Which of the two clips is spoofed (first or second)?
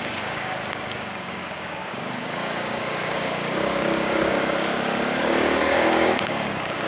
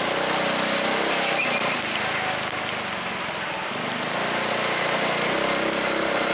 first